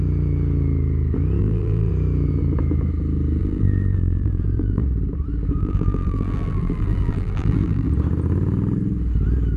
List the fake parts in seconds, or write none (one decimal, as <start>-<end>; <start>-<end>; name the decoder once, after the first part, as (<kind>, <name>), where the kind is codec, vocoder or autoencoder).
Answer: 1.4-1.9 (vocoder, BigVGAN v2); 3.4-4.8; 5.6-7.9